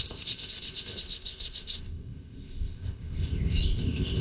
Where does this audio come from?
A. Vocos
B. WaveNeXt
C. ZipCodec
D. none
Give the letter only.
C